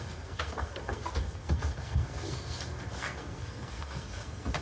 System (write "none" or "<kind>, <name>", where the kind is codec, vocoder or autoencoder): codec, SNAC